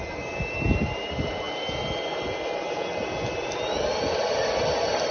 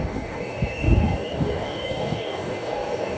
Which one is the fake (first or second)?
second